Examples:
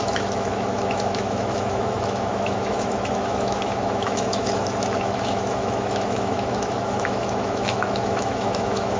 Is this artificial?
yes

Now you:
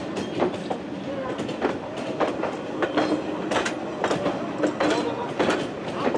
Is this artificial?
no